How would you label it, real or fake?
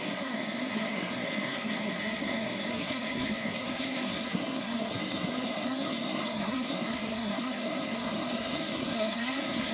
fake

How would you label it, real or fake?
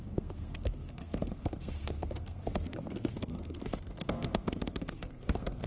fake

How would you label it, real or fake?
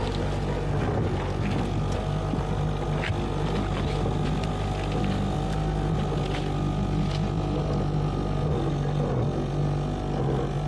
real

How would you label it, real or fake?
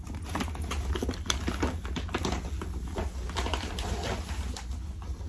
real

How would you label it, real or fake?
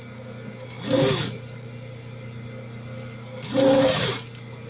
real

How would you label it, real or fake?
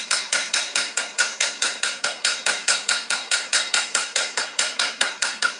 fake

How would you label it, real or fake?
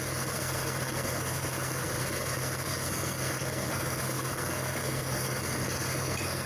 fake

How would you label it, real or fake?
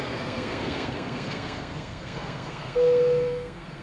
fake